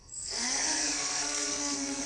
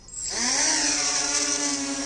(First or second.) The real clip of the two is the second